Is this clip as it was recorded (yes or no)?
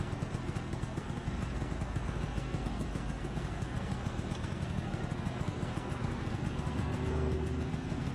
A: no